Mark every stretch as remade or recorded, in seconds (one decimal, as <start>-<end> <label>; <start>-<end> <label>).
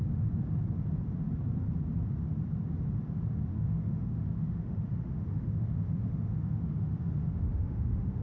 0.0-3.5 recorded; 3.5-8.2 remade